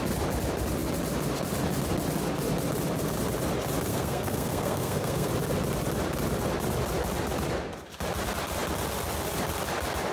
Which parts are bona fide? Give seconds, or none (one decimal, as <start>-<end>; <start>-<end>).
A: 0.0-3.9; 5.3-10.1